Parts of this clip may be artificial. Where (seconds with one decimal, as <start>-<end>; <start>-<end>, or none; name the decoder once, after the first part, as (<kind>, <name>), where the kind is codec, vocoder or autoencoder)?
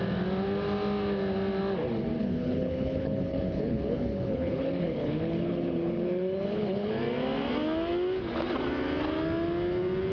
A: 2.2-6.9 (codec, HILCodec)